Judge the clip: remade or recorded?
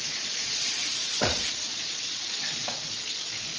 remade